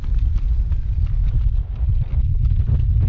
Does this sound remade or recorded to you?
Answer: recorded